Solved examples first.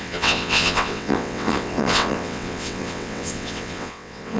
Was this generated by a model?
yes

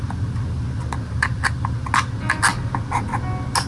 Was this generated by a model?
no